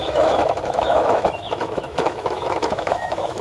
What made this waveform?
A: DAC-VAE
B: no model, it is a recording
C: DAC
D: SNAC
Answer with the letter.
A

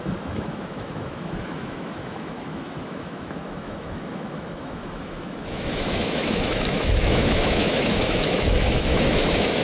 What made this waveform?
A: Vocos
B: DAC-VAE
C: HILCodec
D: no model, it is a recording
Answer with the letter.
B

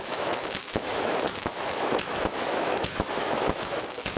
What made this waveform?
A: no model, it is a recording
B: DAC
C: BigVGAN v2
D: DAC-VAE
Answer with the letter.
D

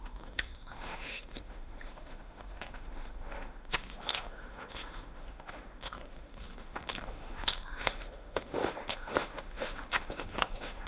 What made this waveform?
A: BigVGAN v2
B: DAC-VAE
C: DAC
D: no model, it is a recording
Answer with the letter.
B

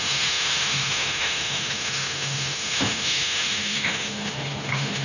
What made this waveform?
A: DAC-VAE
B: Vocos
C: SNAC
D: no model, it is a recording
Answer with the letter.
A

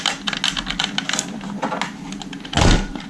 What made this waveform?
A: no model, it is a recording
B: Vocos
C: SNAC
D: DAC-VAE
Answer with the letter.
A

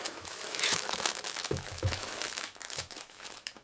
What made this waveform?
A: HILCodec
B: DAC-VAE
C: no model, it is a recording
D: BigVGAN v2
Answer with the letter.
B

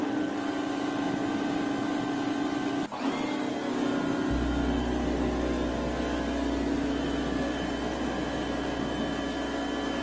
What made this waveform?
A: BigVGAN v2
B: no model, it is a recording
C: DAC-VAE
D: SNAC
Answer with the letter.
B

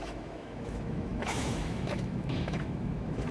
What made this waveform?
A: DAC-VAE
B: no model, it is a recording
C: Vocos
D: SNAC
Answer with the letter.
A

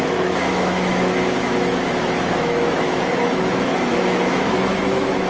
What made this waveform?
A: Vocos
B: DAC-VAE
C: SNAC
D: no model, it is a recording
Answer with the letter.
B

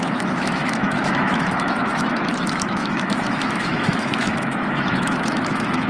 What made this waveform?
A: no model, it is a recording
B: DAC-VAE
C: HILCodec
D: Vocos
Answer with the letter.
B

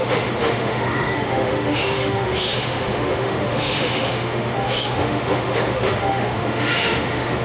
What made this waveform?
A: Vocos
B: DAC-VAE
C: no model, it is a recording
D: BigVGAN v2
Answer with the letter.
B